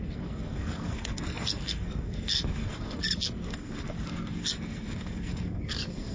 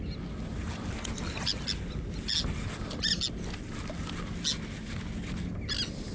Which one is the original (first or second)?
second